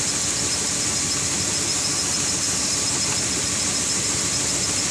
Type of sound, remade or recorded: recorded